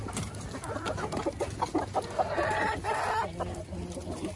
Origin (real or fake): real